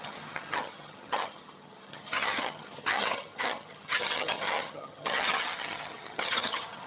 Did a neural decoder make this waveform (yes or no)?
yes